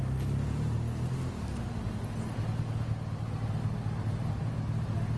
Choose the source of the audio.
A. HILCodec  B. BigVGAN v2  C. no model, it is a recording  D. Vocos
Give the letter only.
C